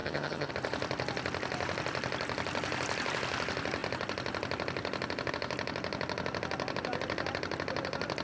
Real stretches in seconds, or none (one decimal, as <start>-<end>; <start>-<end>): 0.5-8.2